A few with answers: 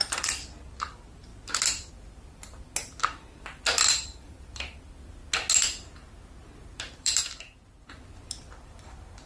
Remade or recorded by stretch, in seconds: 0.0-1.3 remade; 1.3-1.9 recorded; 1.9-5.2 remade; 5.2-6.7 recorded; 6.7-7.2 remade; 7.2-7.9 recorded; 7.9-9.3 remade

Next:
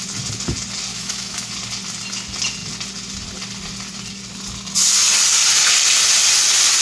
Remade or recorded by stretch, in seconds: 0.0-0.9 recorded; 0.9-1.5 remade; 1.5-6.8 recorded

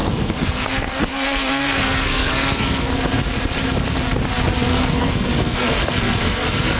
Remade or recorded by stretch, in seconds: 0.0-2.9 remade; 2.9-4.7 recorded; 4.7-6.8 remade

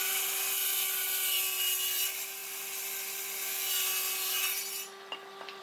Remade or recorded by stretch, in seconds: 0.0-5.6 recorded

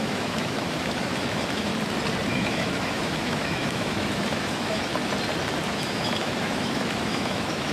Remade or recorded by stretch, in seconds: 0.0-1.7 remade; 1.7-2.3 recorded; 2.3-4.9 remade; 4.9-5.7 recorded; 5.7-7.7 remade